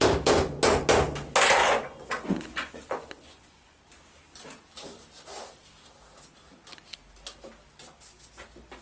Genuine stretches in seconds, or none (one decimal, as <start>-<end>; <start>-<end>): 0.0-1.6; 3.8-8.8